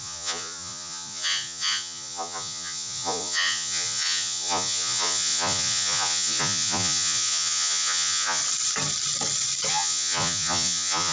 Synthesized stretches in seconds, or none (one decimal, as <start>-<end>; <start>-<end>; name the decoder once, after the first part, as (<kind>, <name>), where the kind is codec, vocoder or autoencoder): 0.0-8.4 (vocoder, Vocos); 9.7-11.1